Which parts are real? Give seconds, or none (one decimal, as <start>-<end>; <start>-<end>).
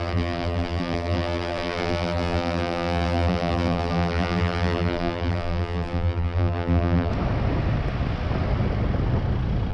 7.1-9.7